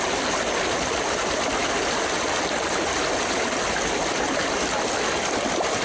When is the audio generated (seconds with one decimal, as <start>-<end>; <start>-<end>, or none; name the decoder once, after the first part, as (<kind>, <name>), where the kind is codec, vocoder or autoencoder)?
none